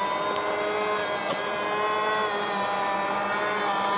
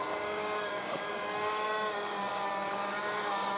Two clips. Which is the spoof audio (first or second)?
second